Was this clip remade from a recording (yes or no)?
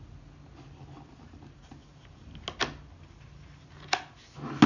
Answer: no